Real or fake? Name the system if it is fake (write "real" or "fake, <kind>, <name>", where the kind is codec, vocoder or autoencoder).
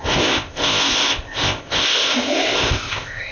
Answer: fake, codec, ZipCodec